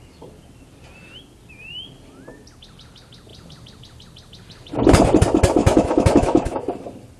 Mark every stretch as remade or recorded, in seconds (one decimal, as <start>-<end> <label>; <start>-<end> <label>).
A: 0.0-5.6 recorded; 5.6-6.6 remade; 6.6-7.2 recorded